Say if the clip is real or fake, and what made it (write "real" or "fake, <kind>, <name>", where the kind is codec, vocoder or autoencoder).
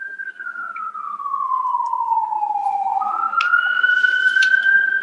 real